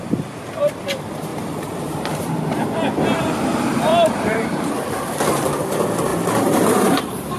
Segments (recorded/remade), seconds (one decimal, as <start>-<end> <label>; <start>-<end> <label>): 0.0-1.3 recorded; 1.3-2.6 remade; 2.6-3.9 recorded; 3.9-4.7 remade; 4.7-6.1 recorded; 6.1-7.0 remade; 7.0-7.4 recorded